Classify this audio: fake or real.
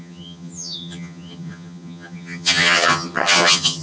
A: fake